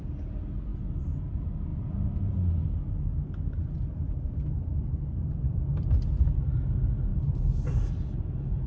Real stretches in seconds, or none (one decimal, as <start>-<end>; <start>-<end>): 0.0-1.7; 2.2-3.6; 6.2-7.1; 7.7-8.7

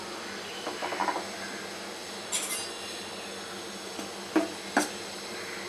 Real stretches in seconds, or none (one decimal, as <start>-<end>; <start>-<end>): 0.0-5.7

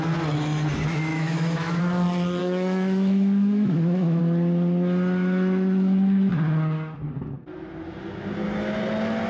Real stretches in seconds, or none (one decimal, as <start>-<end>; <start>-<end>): 0.0-1.1; 1.8-2.4; 4.2-9.3

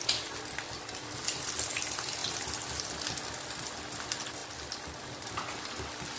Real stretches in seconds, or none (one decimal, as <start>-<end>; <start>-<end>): 0.0-6.2

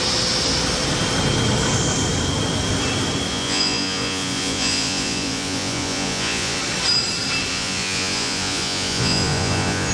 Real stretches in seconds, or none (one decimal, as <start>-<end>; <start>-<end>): 0.0-3.3; 6.6-7.5

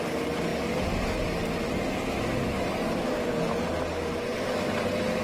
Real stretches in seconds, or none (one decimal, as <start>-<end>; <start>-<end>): 0.0-5.2